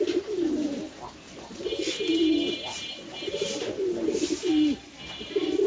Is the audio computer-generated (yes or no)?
no